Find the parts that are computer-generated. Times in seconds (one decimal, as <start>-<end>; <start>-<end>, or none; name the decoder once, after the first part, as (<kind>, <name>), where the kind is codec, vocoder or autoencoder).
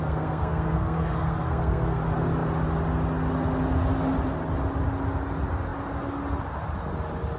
0.0-2.0 (codec, SNAC)